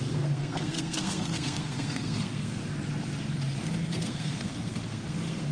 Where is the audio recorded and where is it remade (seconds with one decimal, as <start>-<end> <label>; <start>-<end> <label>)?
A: 0.0-2.6 remade; 2.6-3.6 recorded; 3.6-5.5 remade